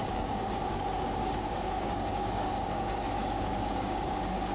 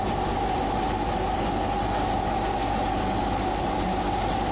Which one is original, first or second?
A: second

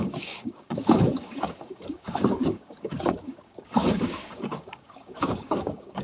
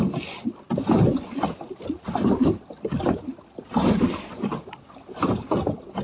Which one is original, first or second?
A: second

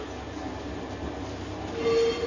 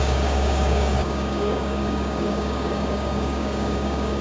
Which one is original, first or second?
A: first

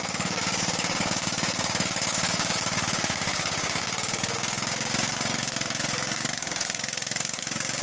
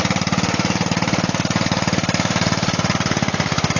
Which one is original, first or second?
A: second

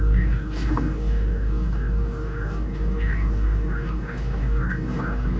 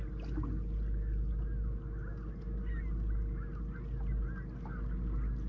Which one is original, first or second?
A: second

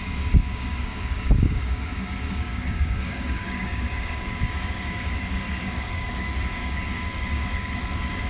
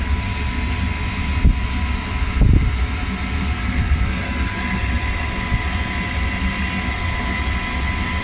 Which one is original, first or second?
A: second